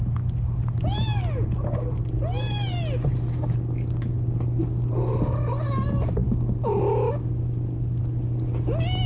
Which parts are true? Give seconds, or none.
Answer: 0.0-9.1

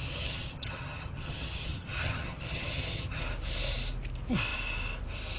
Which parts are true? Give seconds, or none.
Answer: 3.2-5.4

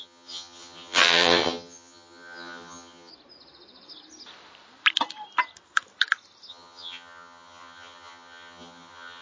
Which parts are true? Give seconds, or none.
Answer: 3.1-6.5

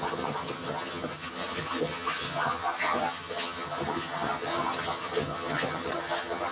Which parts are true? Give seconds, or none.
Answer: none

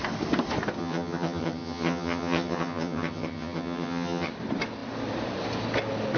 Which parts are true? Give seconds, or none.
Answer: 0.0-0.8; 4.3-6.2

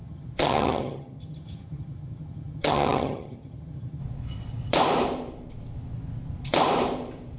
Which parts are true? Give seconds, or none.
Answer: 4.0-7.4